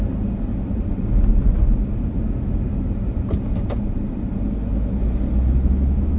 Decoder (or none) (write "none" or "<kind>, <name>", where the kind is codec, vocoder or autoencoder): none